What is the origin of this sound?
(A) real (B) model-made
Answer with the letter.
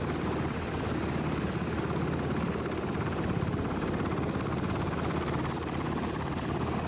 A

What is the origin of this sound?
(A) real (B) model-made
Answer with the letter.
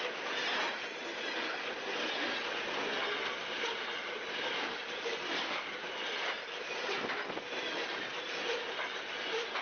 A